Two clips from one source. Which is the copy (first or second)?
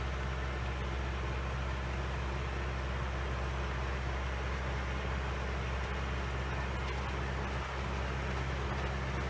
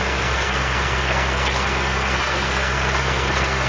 second